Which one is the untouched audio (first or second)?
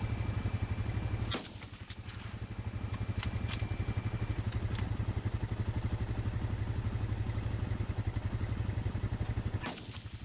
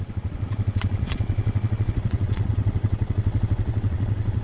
first